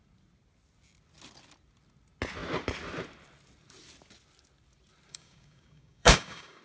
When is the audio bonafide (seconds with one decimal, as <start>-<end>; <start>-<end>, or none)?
0.0-5.1